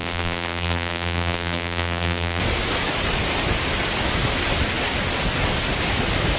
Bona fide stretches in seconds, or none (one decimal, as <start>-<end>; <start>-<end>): 2.4-6.4